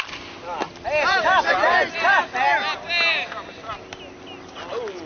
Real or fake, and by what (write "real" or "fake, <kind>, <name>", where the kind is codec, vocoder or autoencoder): real